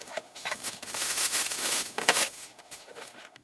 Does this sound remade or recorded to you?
remade